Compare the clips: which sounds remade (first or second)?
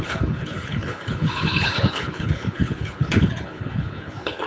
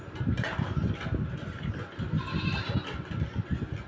first